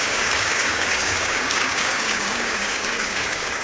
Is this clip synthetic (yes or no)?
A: yes